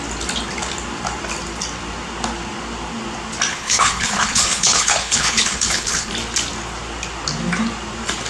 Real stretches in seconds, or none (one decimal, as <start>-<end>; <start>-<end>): 0.0-3.5; 6.1-8.3